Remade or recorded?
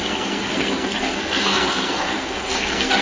remade